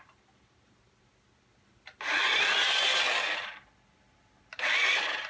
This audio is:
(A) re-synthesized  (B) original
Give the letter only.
B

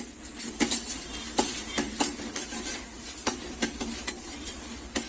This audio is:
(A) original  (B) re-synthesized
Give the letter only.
A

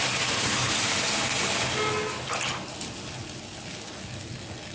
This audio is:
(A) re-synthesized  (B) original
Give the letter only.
B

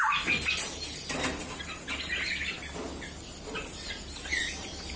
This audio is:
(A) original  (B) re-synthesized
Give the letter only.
A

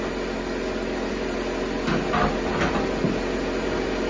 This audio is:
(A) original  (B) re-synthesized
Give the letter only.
A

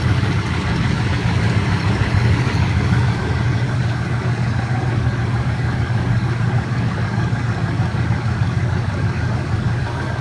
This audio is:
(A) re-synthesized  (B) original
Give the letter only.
A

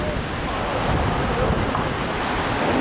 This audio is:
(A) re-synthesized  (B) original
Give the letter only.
B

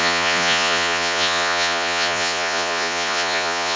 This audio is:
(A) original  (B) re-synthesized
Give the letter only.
B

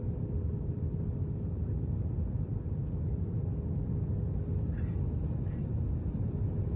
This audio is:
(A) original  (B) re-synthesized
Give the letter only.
A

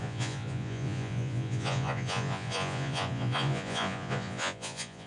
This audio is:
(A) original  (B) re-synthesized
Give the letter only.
B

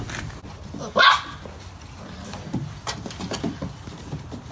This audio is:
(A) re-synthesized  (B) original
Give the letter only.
B